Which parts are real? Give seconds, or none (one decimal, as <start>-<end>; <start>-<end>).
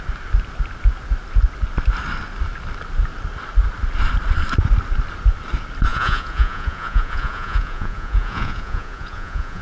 0.0-5.9